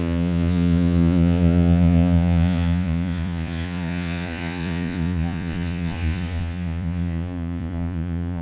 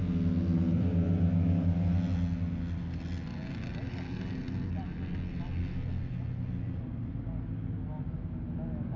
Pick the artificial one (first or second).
first